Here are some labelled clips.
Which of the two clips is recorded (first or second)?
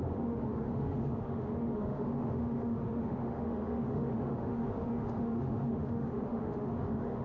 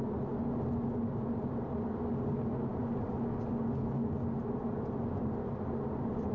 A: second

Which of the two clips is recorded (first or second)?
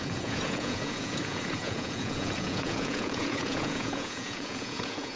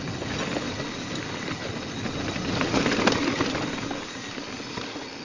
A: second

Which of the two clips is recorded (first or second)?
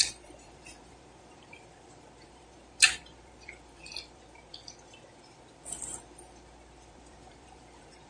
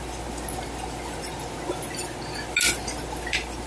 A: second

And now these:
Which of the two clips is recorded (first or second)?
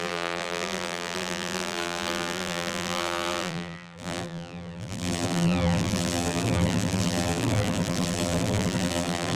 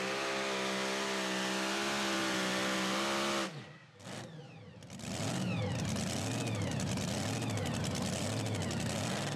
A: second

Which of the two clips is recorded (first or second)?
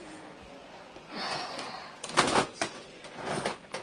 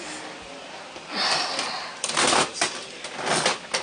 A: second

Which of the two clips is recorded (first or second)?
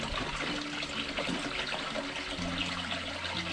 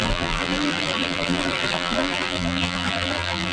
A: first